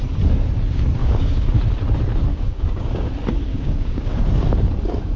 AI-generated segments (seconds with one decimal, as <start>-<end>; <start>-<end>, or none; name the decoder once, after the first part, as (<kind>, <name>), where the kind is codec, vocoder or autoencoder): 1.0-1.6 (codec, DAC); 2.3-3.1; 3.5-4.2